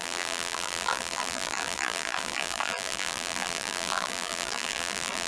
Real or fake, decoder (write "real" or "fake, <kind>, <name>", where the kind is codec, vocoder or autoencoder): fake, vocoder, BigVGAN v2